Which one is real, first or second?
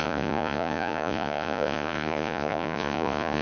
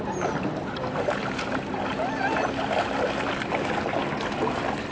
second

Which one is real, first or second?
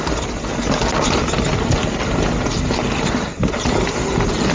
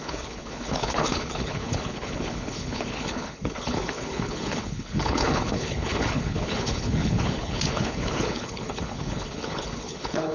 first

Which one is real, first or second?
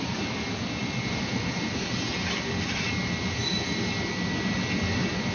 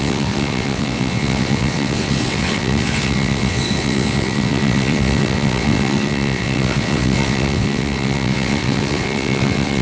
first